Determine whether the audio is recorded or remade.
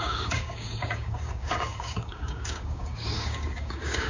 remade